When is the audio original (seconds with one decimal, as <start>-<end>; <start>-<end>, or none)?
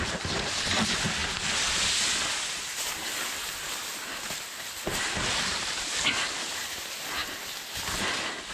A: 0.0-8.5